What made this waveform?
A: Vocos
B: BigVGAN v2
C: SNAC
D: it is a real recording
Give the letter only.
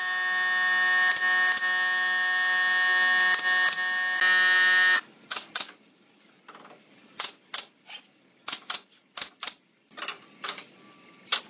D